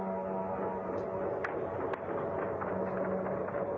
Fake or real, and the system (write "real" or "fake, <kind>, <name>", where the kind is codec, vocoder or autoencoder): real